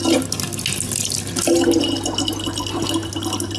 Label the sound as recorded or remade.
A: recorded